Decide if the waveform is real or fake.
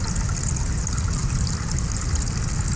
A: real